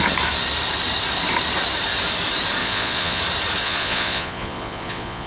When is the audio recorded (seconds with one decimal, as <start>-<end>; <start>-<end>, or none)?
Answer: 0.0-2.6; 3.2-3.6